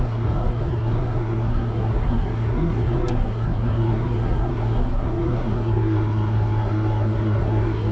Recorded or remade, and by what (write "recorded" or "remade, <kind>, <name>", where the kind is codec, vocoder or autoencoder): remade, codec, SNAC